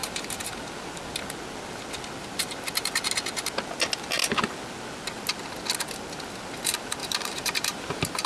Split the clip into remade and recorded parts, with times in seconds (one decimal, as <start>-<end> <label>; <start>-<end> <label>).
0.0-0.5 remade; 0.5-2.2 recorded; 2.2-3.0 remade; 3.0-7.0 recorded; 7.0-8.3 remade